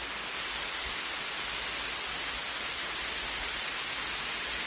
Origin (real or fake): real